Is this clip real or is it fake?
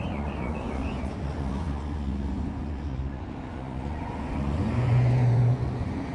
fake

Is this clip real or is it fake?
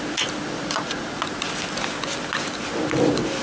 real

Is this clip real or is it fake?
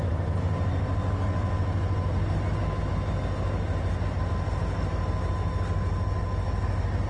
real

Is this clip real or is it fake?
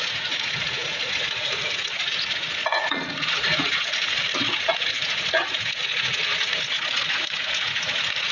fake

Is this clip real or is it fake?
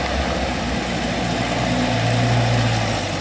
real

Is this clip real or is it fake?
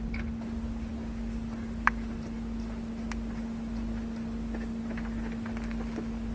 real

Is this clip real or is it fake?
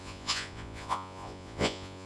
fake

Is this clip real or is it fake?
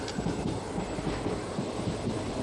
real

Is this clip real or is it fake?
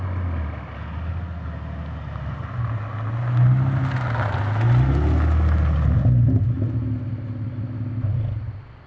real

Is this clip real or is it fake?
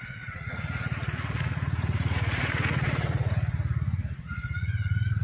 fake